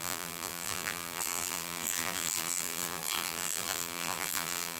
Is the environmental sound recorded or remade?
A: remade